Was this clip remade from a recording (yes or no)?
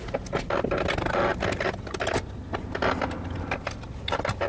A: no